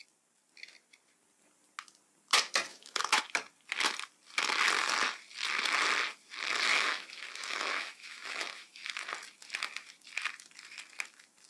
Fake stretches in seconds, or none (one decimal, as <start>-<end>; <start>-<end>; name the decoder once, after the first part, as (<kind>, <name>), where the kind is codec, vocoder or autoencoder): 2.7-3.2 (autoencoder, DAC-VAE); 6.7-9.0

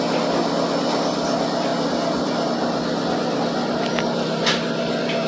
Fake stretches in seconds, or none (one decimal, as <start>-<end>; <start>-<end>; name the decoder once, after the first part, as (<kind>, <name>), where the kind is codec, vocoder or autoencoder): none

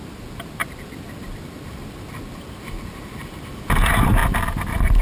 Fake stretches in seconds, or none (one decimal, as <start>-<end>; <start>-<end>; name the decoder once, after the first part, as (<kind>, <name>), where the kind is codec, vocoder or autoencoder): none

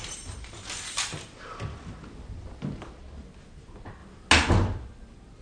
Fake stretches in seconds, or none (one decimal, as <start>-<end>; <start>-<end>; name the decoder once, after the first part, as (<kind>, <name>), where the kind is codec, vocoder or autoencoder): none

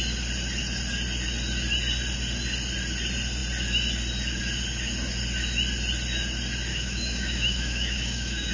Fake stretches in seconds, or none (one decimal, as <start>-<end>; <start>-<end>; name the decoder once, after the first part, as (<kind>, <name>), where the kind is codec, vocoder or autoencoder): 6.7-8.5 (autoencoder, DAC-VAE)

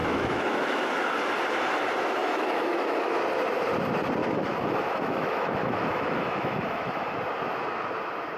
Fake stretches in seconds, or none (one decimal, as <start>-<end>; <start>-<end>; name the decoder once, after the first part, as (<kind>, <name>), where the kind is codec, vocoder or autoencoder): 0.0-1.1 (autoencoder, DAC-VAE); 2.2-3.2; 4.2-7.2

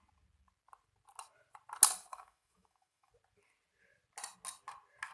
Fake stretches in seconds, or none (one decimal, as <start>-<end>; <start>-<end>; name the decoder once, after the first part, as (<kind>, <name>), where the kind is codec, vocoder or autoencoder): 2.1-3.1 (autoencoder, DAC-VAE)